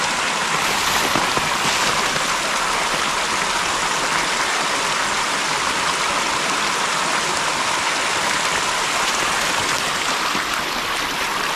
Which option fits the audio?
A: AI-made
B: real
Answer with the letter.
B